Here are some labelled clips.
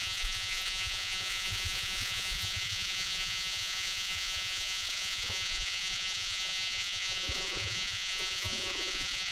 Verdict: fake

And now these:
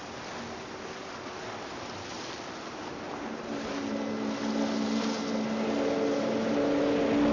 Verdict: real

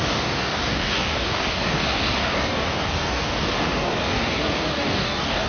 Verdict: fake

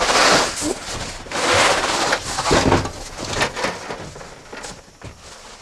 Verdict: real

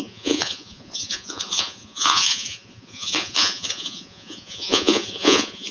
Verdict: fake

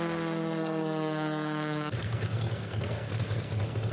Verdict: fake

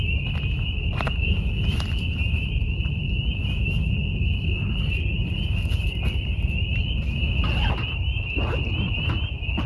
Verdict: real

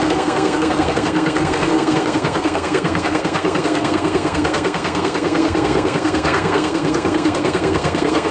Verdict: fake